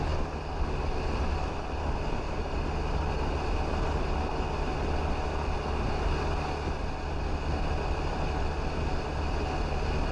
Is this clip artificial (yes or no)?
no